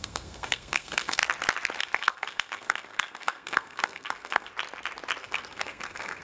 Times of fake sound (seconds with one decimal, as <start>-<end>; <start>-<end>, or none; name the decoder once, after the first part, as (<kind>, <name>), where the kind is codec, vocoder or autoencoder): 0.0-1.2 (codec, SNAC); 1.8-4.5; 5.2-6.2